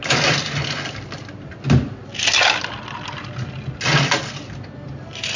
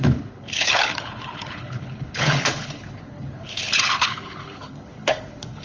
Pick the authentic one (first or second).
first